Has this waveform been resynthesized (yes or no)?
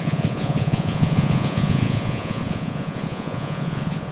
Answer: yes